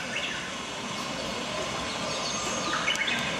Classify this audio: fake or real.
fake